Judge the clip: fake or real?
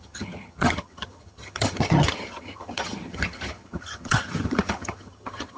fake